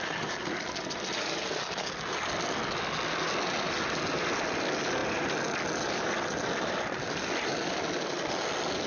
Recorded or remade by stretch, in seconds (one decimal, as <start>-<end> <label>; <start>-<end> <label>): 0.0-8.9 recorded